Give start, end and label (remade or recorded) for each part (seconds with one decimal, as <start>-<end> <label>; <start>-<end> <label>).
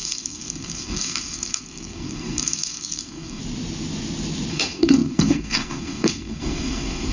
0.0-3.4 remade; 3.4-4.5 recorded; 4.5-7.1 remade